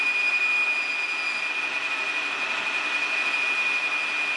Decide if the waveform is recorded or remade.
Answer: recorded